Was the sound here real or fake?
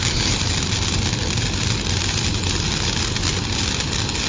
real